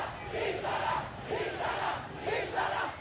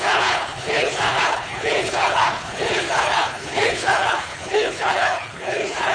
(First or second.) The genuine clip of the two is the first